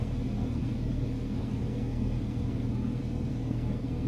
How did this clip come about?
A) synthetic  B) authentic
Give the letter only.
A